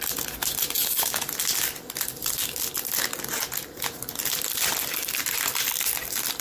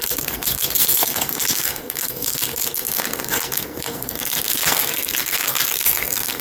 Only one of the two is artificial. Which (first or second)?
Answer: second